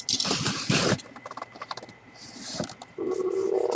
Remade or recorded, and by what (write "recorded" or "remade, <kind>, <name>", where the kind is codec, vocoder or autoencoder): recorded